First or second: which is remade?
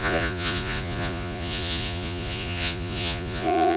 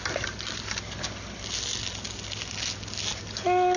first